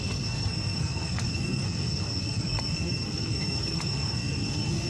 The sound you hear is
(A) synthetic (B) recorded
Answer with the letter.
A